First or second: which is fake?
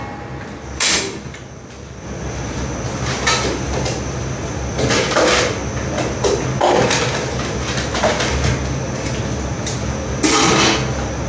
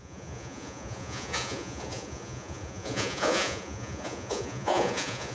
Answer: second